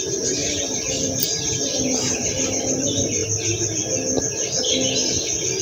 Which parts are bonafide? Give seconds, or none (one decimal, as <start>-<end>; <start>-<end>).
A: 0.0-0.4; 2.6-5.0